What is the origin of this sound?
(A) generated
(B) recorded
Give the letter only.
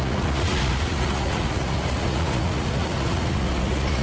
A